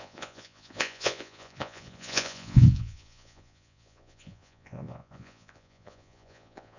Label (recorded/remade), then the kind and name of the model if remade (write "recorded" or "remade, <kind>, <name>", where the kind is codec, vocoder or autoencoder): remade, vocoder, Vocos